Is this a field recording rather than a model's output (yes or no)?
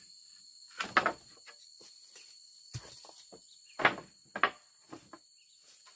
yes